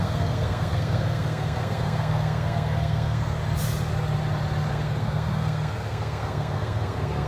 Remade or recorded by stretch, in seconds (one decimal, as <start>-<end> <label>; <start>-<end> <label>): 0.0-3.4 remade; 3.4-4.7 recorded; 4.7-7.3 remade